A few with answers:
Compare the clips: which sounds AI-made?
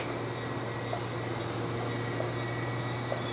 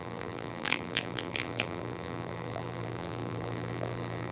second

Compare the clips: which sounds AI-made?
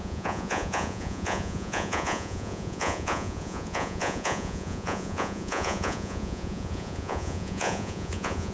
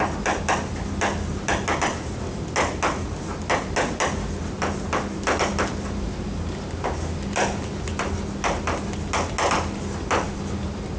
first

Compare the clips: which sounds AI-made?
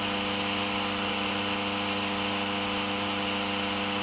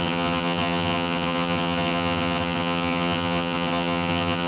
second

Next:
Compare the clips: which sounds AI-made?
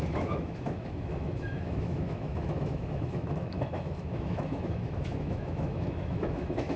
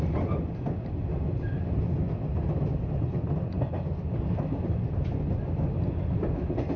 first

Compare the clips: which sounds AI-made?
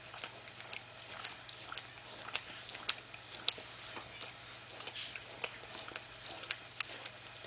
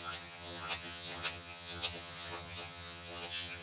second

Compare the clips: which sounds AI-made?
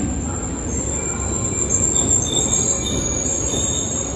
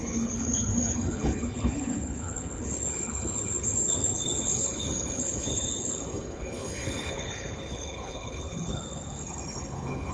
second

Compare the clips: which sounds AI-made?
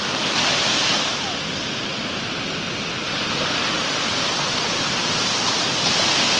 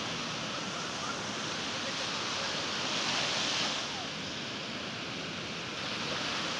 first